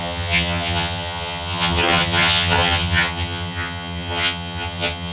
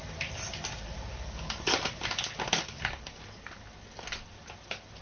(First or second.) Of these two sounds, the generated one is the first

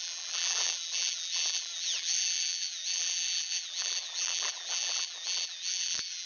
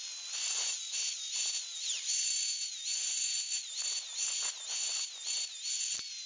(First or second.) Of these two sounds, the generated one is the first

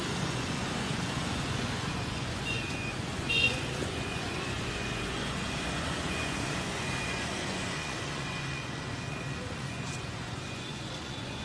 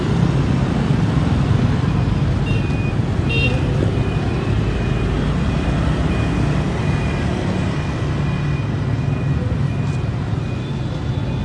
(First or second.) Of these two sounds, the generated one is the first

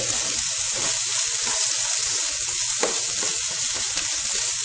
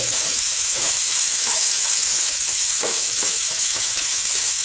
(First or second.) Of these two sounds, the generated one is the second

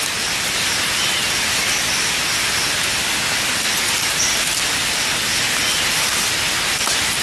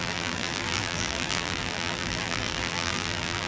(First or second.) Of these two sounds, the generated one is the second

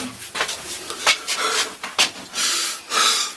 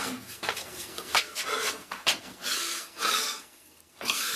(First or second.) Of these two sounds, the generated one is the second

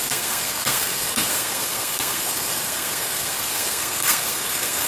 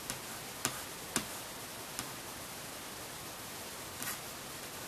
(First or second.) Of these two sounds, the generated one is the first